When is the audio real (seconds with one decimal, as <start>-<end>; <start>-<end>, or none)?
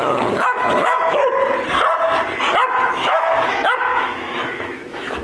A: 1.2-2.8